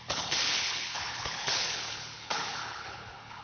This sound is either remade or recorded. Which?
remade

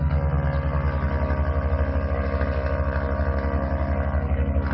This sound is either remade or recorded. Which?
recorded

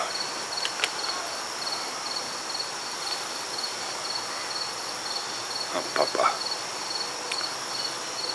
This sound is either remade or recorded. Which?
recorded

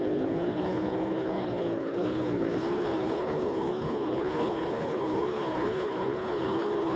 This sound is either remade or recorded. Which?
remade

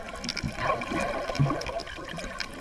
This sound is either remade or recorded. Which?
recorded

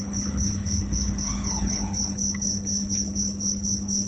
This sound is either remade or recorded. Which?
remade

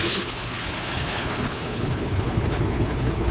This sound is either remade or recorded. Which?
remade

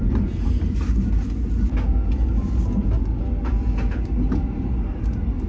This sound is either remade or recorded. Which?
recorded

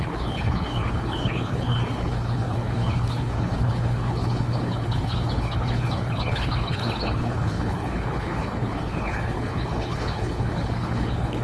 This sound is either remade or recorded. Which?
remade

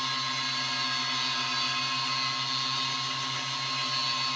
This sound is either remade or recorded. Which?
recorded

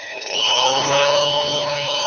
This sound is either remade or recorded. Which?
remade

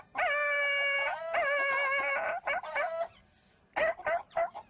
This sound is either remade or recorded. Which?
recorded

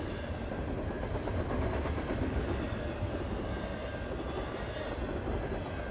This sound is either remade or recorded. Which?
recorded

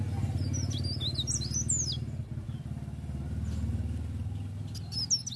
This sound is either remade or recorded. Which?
recorded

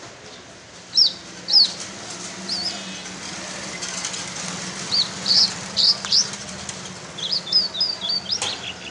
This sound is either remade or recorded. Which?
recorded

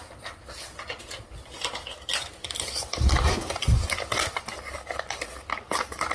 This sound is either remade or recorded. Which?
recorded